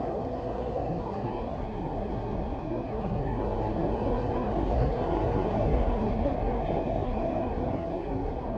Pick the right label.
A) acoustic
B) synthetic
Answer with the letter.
B